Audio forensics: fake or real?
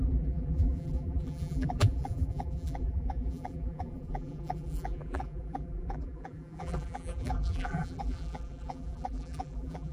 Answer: fake